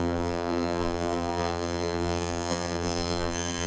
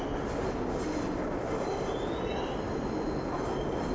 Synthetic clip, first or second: first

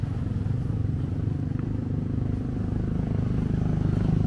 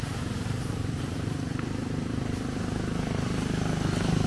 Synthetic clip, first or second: second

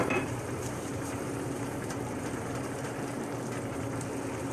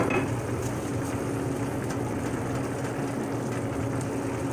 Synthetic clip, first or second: first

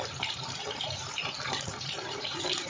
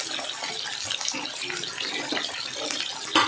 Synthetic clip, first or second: first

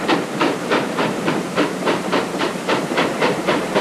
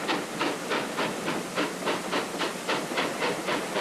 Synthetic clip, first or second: first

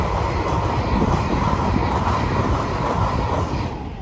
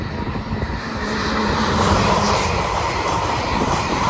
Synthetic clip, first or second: second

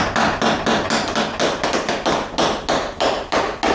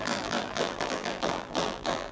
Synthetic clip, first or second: second